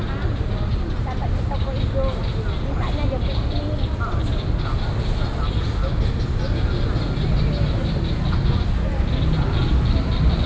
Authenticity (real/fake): real